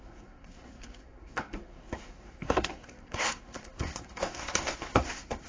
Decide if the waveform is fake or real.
fake